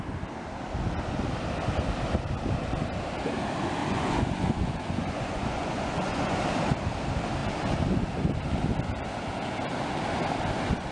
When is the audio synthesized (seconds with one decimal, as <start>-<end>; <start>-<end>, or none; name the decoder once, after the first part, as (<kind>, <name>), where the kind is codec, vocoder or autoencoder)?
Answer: 3.8-6.4 (vocoder, Vocos)